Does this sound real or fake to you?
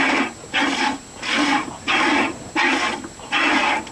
real